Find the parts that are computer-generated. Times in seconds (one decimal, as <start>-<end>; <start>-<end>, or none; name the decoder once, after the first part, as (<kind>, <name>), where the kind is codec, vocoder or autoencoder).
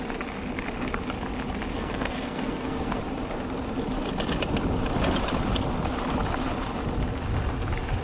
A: 1.7-3.0 (codec, SNAC)